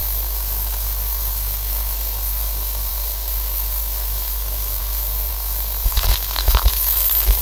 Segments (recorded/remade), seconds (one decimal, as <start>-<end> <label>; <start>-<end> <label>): 0.0-7.4 remade